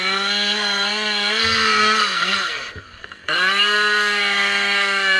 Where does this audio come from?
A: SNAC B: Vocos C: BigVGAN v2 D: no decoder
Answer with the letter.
A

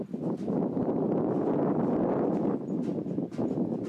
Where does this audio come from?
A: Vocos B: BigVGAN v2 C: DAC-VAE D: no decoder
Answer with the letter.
D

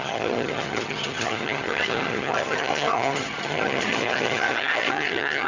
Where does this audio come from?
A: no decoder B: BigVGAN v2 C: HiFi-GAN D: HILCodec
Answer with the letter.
C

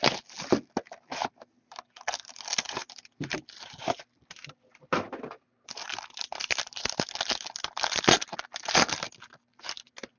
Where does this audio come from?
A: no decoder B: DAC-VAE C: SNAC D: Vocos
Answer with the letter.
A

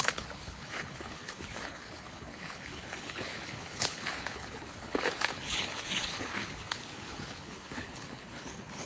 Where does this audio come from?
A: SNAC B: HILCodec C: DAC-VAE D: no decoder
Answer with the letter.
B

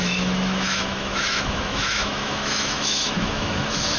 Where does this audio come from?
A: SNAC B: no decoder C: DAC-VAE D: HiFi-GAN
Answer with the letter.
C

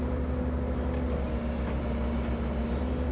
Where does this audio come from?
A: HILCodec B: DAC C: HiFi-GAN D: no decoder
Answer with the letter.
D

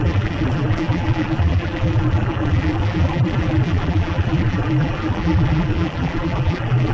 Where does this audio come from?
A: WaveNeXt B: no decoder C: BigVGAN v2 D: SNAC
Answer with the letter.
C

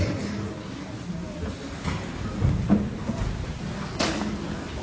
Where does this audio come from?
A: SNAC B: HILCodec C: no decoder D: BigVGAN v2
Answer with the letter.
C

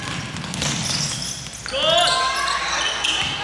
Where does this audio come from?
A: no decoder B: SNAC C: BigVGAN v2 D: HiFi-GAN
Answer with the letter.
A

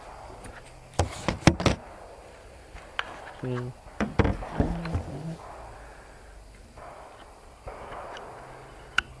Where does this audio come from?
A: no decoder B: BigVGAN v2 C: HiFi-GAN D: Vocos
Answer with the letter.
A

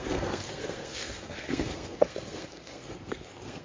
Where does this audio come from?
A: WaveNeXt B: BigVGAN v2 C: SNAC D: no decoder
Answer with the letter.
C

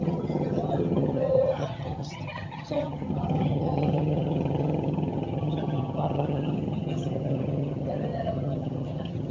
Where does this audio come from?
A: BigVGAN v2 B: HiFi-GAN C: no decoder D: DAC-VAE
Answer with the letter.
B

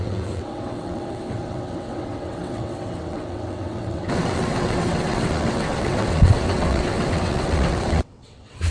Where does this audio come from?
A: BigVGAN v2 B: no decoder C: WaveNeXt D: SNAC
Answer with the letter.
C